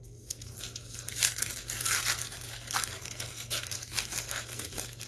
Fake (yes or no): yes